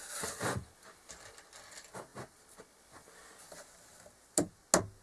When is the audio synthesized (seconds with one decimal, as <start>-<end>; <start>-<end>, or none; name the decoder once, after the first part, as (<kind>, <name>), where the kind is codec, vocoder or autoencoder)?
none